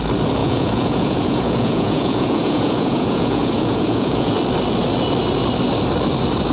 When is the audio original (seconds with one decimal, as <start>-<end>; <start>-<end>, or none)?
0.0-0.4; 4.3-6.5